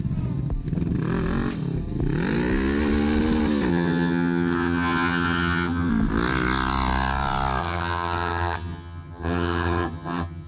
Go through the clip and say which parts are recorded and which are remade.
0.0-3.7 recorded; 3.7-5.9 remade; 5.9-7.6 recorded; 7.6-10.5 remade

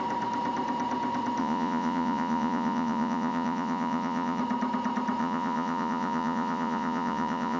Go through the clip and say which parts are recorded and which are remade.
0.0-1.4 recorded; 1.4-4.4 remade; 4.4-5.2 recorded; 5.2-7.6 remade